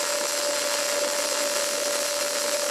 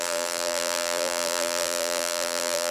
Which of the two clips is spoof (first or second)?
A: second